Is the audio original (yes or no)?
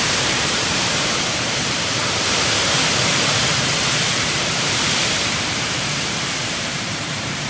no